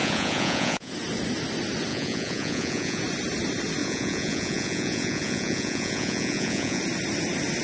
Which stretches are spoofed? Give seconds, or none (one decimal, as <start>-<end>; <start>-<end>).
0.0-0.9; 1.9-3.0; 3.8-6.8